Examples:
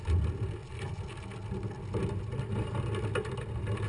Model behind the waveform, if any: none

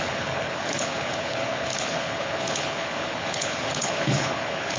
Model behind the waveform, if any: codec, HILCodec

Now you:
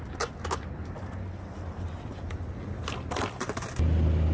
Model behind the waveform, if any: none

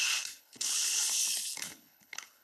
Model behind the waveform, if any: codec, HILCodec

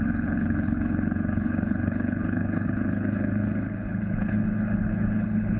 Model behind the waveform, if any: codec, HILCodec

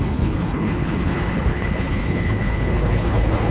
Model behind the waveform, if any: codec, HILCodec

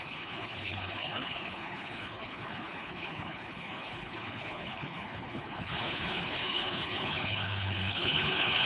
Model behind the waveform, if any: codec, HILCodec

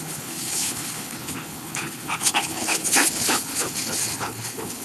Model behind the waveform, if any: codec, HILCodec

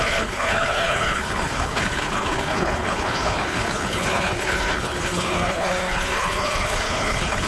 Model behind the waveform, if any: codec, HILCodec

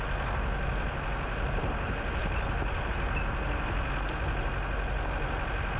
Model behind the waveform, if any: none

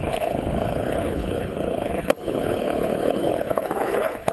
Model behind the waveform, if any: codec, HILCodec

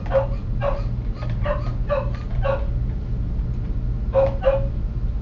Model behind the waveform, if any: none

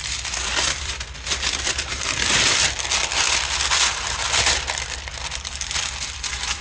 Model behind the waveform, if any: none